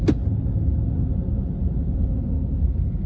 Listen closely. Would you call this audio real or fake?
real